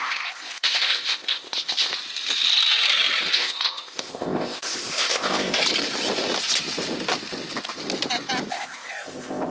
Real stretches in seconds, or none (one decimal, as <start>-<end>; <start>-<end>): 1.9-3.3; 5.6-8.5